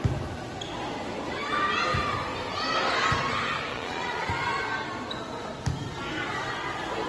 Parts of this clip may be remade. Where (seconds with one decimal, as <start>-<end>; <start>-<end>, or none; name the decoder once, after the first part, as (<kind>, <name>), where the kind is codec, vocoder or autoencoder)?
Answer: 3.7-4.3 (vocoder, Vocos)